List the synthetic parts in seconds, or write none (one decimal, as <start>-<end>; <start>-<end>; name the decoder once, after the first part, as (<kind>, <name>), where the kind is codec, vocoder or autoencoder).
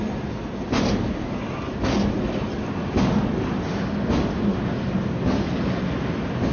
none